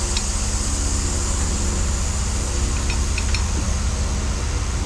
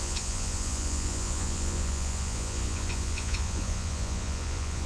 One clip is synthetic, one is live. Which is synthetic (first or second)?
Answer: second